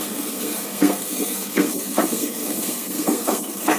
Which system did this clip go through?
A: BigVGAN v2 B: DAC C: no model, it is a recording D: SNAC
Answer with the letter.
D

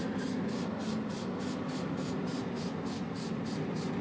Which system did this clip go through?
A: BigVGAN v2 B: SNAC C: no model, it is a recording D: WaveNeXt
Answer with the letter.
C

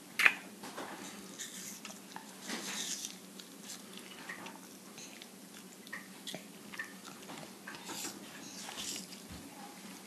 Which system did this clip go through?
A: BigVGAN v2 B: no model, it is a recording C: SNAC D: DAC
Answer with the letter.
B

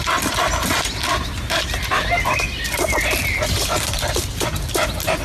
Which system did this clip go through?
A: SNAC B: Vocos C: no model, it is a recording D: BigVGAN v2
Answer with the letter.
C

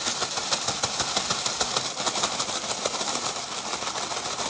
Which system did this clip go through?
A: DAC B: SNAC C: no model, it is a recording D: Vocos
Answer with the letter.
C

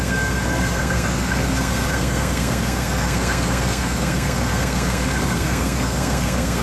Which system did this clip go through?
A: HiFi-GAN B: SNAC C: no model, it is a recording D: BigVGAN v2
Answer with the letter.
B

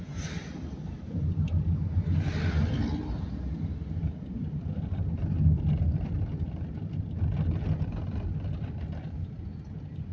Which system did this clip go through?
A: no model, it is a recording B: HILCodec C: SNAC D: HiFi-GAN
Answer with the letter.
A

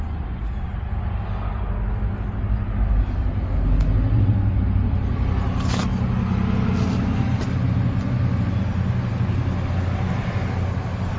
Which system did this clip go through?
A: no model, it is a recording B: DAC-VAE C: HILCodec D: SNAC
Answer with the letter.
A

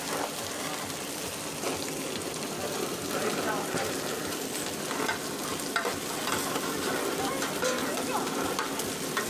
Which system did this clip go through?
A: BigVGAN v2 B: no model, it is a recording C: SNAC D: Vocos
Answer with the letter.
B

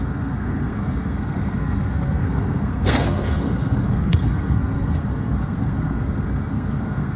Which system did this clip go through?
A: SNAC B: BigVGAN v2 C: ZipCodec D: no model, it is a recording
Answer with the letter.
A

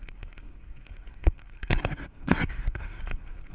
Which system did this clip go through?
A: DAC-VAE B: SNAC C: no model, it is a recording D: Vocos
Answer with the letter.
B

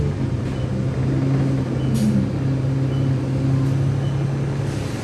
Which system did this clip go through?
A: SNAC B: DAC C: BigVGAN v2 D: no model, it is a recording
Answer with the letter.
D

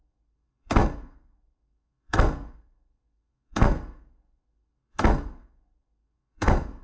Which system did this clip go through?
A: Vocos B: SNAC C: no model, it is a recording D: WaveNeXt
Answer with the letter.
B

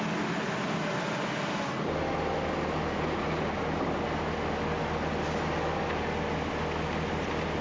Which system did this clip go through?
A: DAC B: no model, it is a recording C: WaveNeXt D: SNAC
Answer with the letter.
B